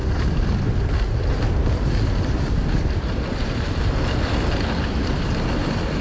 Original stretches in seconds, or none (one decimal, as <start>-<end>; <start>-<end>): 0.0-6.0